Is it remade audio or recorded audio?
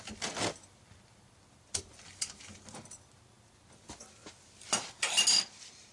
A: recorded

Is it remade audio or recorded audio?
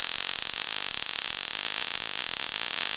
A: recorded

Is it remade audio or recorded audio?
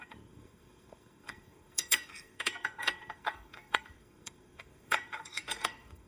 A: remade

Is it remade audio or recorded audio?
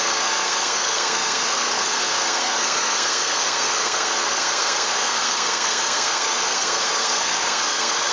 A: remade